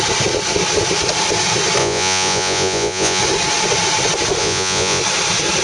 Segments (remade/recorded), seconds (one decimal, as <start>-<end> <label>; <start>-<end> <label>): 0.0-1.8 recorded; 1.8-3.2 remade; 3.2-4.4 recorded; 4.4-5.0 remade; 5.0-5.6 recorded